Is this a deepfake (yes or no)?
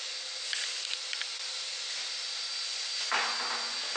no